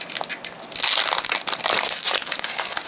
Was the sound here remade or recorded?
recorded